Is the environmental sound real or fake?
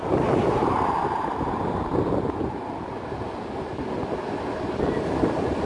real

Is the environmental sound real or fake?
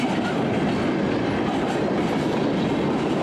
real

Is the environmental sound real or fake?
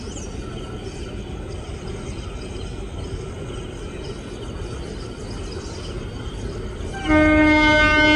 real